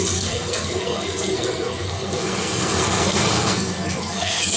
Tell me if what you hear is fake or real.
fake